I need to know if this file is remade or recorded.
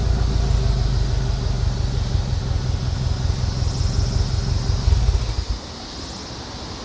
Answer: recorded